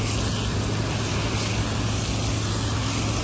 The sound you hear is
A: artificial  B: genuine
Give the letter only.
B